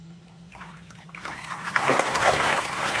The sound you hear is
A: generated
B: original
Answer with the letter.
A